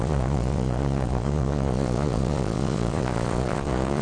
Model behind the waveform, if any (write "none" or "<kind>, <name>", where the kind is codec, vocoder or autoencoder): vocoder, Vocos